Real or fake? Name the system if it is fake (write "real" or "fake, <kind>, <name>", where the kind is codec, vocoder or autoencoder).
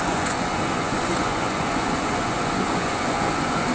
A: fake, vocoder, Vocos